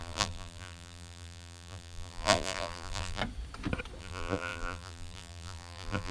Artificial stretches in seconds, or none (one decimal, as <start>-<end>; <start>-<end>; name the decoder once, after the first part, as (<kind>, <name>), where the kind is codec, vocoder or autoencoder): 0.0-3.2 (vocoder, BigVGAN v2); 4.0-6.1